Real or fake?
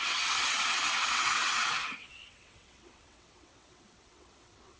fake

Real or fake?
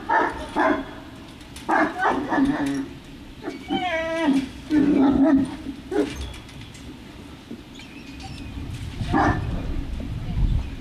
real